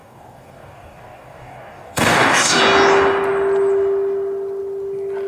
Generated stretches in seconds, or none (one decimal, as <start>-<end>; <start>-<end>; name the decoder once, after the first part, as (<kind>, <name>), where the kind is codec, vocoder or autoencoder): 0.0-2.6 (codec, DAC)